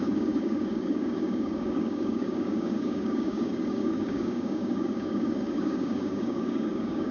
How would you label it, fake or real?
fake